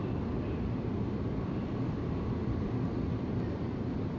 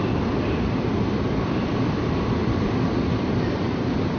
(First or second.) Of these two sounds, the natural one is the first